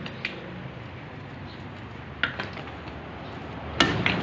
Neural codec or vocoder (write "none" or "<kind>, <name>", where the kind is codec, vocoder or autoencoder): none